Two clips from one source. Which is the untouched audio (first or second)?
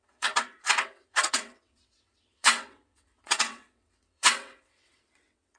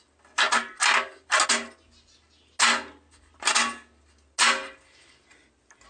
second